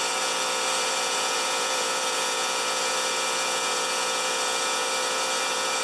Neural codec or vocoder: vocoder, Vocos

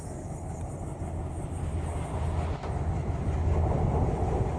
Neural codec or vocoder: none